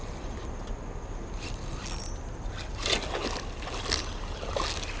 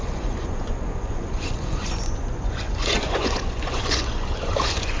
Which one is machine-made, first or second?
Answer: second